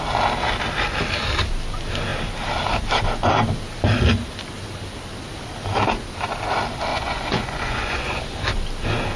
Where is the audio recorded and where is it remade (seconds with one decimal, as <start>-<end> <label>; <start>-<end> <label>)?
0.0-6.9 recorded; 6.9-8.2 remade; 8.2-9.2 recorded